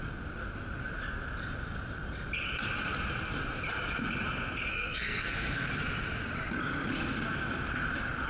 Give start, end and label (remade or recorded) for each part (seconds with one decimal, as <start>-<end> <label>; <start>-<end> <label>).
0.0-4.7 recorded; 4.7-5.7 remade; 5.7-8.3 recorded